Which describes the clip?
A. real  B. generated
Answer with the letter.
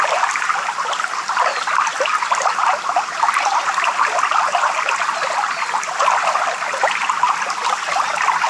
A